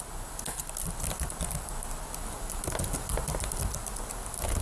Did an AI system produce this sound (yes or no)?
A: no